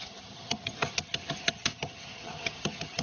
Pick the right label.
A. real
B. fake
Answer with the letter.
B